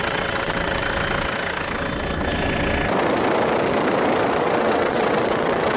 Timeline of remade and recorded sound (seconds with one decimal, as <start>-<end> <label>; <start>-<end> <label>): 0.0-0.8 remade; 0.8-4.3 recorded; 4.3-5.8 remade